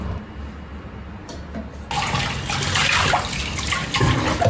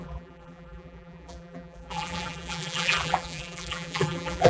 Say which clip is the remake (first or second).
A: second